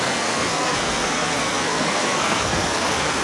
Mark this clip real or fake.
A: fake